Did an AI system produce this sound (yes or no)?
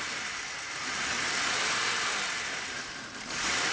no